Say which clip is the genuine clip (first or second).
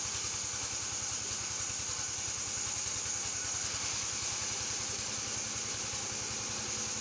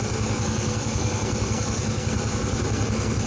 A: first